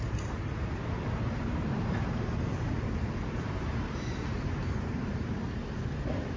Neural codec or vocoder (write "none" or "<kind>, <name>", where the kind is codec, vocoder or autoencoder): vocoder, BigVGAN v2